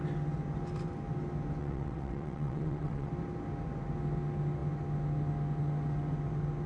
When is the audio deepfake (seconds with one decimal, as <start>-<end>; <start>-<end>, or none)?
1.6-3.1